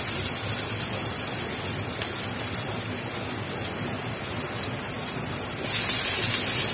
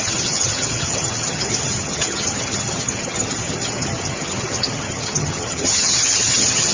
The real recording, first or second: first